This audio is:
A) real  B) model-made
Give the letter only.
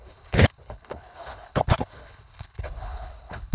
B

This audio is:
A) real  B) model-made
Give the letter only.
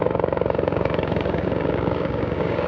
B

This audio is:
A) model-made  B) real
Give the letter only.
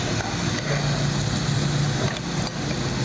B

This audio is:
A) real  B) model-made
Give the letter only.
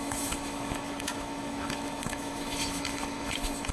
B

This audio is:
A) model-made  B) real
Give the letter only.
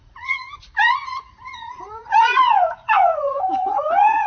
A